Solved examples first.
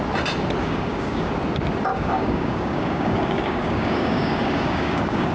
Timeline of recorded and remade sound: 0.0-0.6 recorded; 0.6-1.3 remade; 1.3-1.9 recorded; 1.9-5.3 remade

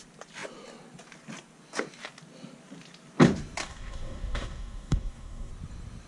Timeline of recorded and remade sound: 0.0-3.6 recorded; 3.6-5.5 remade; 5.5-6.1 recorded

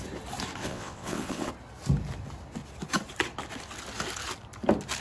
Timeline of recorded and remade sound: 0.0-0.6 recorded; 0.6-1.5 remade; 1.5-5.0 recorded

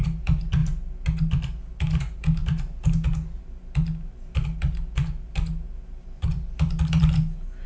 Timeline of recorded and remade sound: 0.0-7.7 recorded

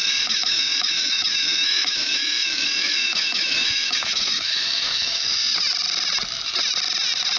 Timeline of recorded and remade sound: 0.0-5.3 remade; 5.3-7.4 recorded

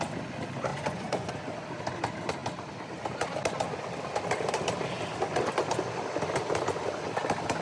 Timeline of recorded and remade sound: 0.0-0.7 recorded; 0.7-1.3 remade; 1.3-7.6 recorded

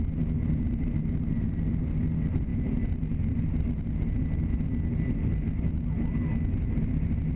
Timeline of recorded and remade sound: 0.0-7.4 recorded

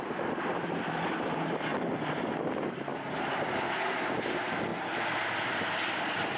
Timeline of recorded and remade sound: 0.0-1.7 remade; 1.7-2.2 recorded; 2.2-2.9 remade; 2.9-4.3 recorded; 4.3-4.7 remade; 4.7-5.2 recorded; 5.2-6.4 remade